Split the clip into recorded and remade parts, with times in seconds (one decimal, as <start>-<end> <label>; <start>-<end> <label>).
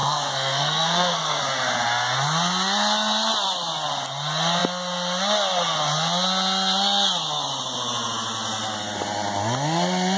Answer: 0.0-1.4 remade; 1.4-10.2 recorded